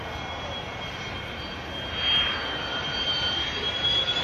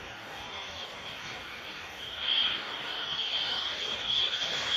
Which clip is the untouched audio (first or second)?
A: first